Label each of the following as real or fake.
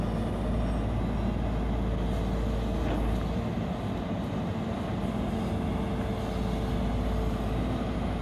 real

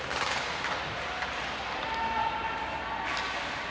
real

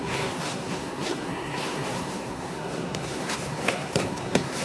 fake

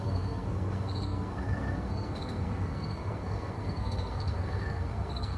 fake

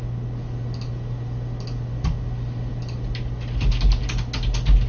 real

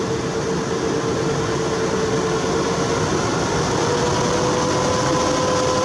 real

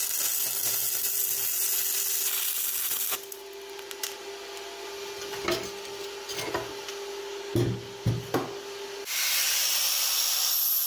real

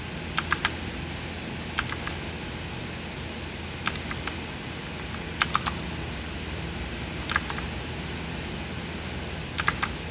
real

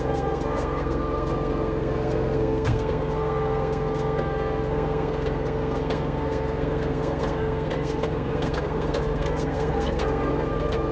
fake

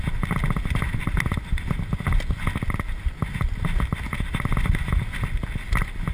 real